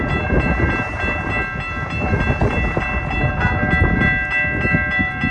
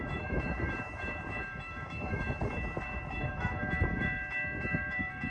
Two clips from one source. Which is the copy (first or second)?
second